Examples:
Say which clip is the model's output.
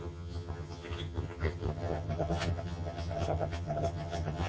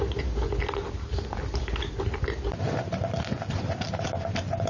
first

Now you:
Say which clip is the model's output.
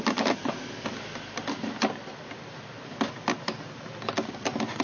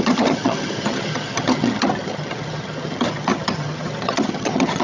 second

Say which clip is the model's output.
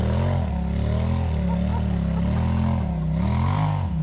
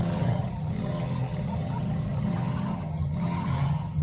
second